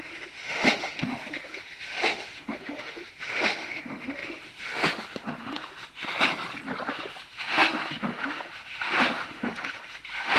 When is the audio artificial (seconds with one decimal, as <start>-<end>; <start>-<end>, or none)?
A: 0.0-6.1; 6.9-10.4